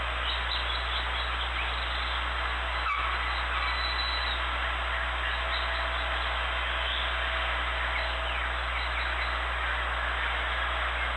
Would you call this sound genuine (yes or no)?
yes